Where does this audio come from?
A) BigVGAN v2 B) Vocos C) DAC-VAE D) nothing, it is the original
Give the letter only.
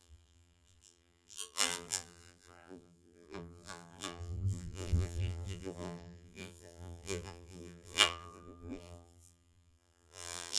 A